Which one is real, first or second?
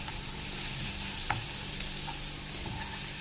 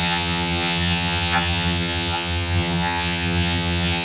first